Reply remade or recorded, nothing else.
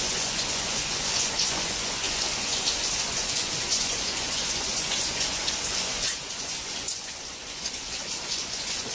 remade